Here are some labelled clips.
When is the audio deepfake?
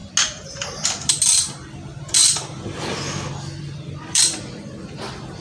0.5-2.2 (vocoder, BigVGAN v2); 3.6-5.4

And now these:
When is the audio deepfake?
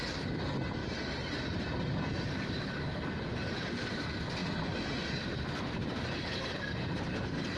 0.8-3.7 (vocoder, BigVGAN v2); 5.8-6.3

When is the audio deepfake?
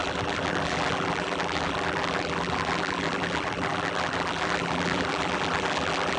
0.0-6.2 (vocoder, BigVGAN v2)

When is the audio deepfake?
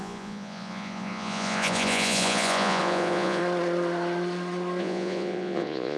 0.0-3.4 (vocoder, Vocos); 4.8-6.0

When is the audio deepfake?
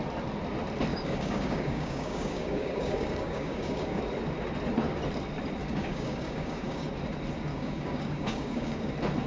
0.9-4.0 (codec, DAC); 5.6-6.9; 7.5-8.9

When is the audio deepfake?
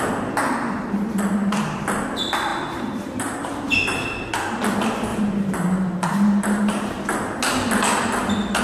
2.5-4.3 (vocoder, BigVGAN v2); 5.1-7.4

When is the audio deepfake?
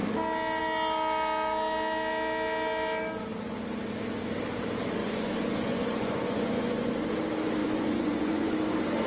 5.0-6.9 (vocoder, Vocos); 7.6-8.5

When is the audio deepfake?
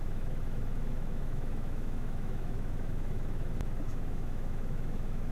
0.0-5.3 (autoencoder, DAC-VAE)